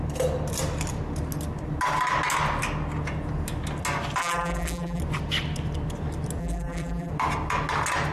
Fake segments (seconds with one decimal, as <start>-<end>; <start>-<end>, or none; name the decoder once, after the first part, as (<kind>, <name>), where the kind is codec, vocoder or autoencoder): 4.2-5.0 (vocoder, BigVGAN v2); 6.4-7.1